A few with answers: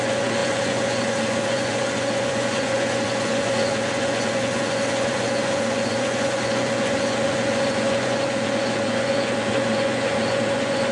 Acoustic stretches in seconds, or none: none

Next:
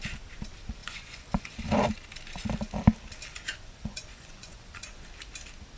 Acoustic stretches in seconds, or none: 0.0-0.8; 1.6-3.3; 5.1-5.8

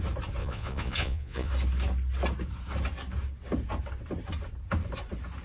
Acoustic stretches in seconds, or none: 0.0-0.4; 1.5-5.4

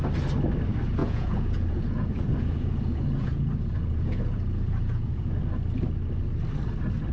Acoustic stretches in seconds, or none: 0.0-1.0; 5.3-7.1

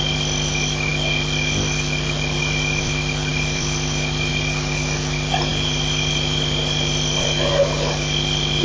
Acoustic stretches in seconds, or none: 0.9-2.4

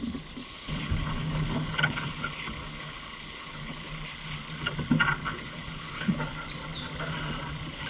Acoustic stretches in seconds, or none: 0.0-0.4; 3.9-5.2; 6.2-7.9